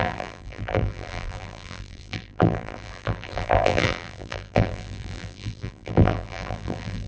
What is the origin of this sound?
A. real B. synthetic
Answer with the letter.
B